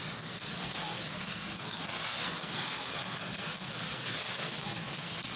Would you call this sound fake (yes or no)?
yes